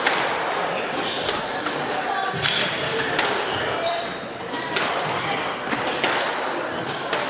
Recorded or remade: remade